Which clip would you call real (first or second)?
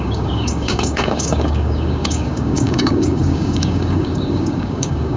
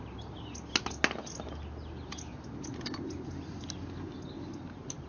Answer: second